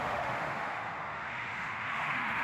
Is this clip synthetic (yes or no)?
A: yes